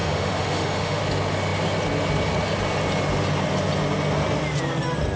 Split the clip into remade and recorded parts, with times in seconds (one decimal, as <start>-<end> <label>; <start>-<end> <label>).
0.0-1.0 remade; 1.0-5.2 recorded

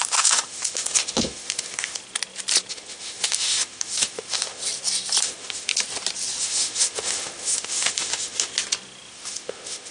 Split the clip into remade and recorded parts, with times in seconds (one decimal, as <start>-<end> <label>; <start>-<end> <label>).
0.0-2.0 remade; 2.0-2.7 recorded; 2.7-4.6 remade; 4.6-5.2 recorded; 5.2-5.7 remade; 5.7-6.4 recorded; 6.4-8.5 remade; 8.5-9.1 recorded; 9.1-9.9 remade

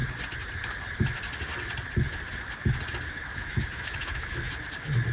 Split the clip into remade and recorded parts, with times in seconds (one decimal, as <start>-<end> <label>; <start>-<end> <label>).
0.0-3.3 recorded; 3.3-4.5 remade; 4.5-5.1 recorded

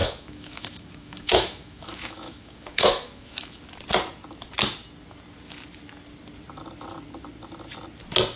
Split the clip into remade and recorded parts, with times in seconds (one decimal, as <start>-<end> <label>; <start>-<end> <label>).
0.0-3.6 remade; 3.6-8.4 recorded

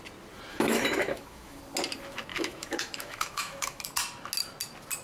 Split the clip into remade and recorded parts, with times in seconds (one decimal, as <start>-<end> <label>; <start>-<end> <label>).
0.0-0.5 recorded; 0.5-1.6 remade; 1.6-2.3 recorded; 2.3-3.8 remade; 3.8-5.0 recorded

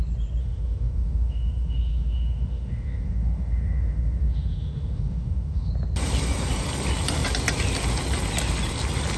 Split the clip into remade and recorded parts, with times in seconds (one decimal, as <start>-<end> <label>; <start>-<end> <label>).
0.0-0.4 recorded; 0.4-5.7 remade; 5.7-9.2 recorded

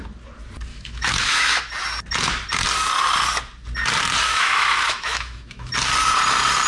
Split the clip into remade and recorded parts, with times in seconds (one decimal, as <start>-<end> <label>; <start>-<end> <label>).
0.0-0.7 recorded; 0.7-1.7 remade; 1.7-4.3 recorded; 4.3-5.7 remade; 5.7-6.7 recorded

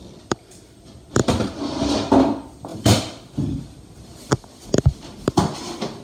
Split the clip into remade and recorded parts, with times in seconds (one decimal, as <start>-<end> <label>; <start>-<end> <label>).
0.0-6.0 recorded